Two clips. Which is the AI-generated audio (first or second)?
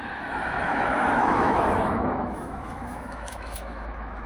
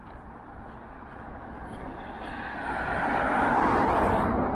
first